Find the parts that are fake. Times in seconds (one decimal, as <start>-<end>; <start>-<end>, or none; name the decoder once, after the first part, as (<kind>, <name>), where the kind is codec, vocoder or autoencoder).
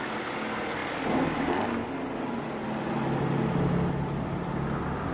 none